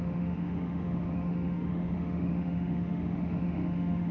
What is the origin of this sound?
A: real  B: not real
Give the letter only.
B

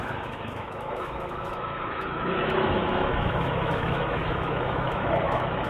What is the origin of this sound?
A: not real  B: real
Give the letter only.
A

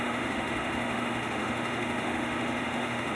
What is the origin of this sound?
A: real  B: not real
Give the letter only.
B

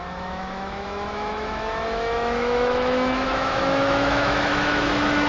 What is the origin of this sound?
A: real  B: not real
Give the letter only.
B